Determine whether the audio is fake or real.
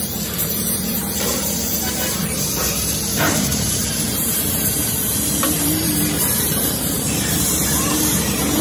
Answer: fake